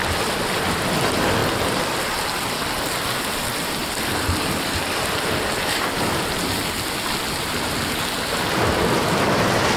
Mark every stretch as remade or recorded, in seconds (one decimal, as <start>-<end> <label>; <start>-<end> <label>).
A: 0.0-9.8 recorded